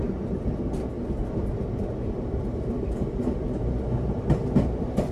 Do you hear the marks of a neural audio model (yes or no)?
no